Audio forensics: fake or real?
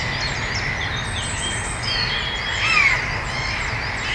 real